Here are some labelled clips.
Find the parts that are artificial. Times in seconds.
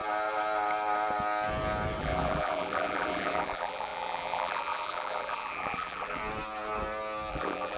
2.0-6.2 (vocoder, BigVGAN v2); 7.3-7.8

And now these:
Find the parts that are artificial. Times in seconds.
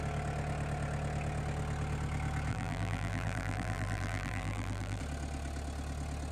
2.5-5.0 (vocoder, BigVGAN v2)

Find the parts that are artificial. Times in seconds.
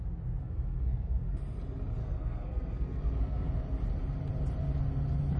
0.4-1.4 (codec, SNAC); 2.0-3.5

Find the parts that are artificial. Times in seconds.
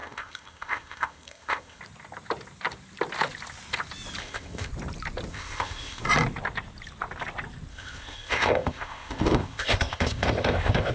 0.0-1.8 (codec, ZipCodec); 4.2-4.7; 5.3-6.0; 7.7-10.9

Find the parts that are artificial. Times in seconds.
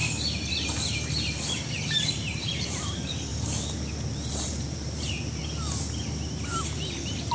1.7-3.3 (vocoder, BigVGAN v2); 4.1-5.4; 6.5-7.3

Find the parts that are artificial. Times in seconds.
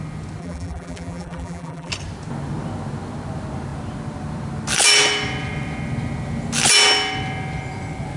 0.4-1.9 (vocoder, BigVGAN v2)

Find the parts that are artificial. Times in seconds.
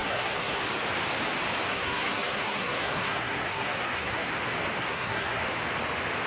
0.0-0.6 (codec, SNAC); 1.7-4.3; 4.8-5.4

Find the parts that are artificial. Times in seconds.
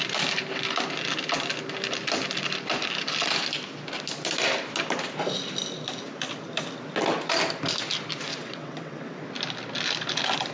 8.3-9.2 (vocoder, WaveNeXt)